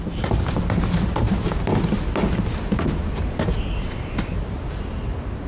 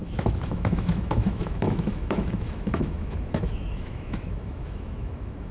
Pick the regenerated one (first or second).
second